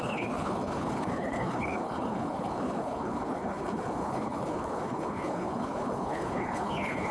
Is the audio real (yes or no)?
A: no